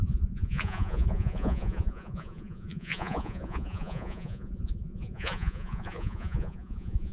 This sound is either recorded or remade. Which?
remade